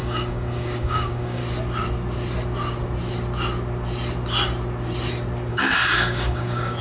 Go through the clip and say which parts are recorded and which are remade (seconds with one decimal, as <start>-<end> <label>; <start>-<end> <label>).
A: 0.0-1.4 remade; 1.4-5.5 recorded; 5.5-6.8 remade